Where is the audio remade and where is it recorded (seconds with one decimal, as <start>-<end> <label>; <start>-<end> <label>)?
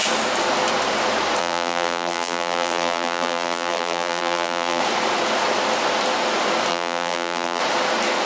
0.0-1.4 recorded; 1.4-4.8 remade; 4.8-6.7 recorded; 6.7-7.6 remade; 7.6-8.3 recorded